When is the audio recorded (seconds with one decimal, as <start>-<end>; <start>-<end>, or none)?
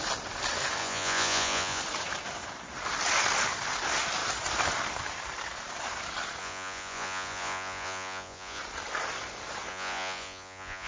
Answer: 0.0-0.8; 1.8-6.4; 8.6-9.7